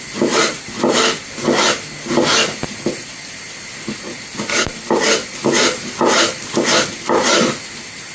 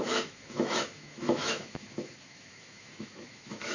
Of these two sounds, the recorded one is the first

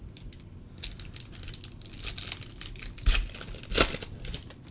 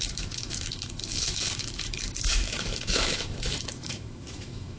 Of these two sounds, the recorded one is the first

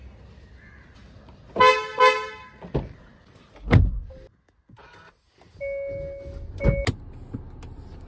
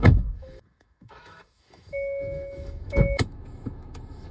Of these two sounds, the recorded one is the first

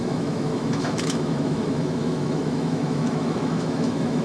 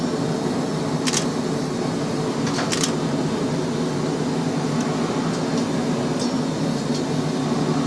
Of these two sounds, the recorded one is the second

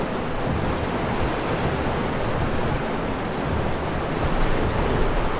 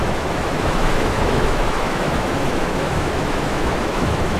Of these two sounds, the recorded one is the first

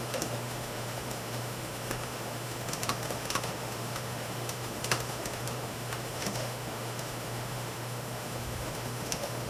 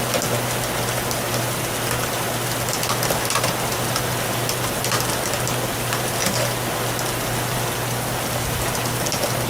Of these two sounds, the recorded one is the second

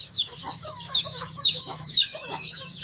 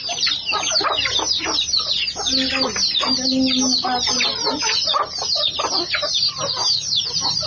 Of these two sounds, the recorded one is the second